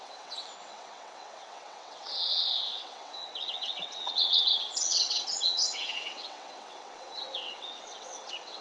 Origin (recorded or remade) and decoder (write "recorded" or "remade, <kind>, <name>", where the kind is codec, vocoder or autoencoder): remade, vocoder, WaveNeXt